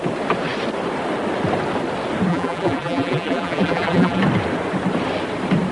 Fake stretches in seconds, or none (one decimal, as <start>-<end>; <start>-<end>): 2.3-4.2